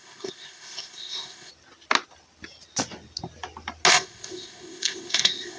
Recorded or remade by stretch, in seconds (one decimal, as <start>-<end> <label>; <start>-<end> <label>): 0.0-1.5 remade; 1.5-3.9 recorded; 3.9-5.6 remade